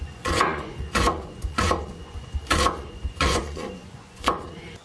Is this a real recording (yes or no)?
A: no